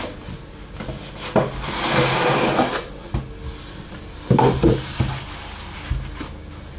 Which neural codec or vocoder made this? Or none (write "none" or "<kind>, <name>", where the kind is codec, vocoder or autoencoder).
none